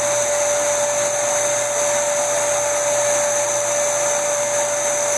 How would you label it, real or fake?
real